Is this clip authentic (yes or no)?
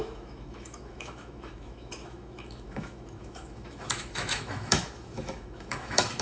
no